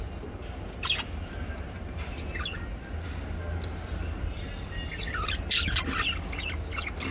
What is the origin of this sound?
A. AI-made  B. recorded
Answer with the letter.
B